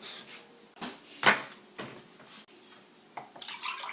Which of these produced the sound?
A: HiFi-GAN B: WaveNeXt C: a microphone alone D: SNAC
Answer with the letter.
C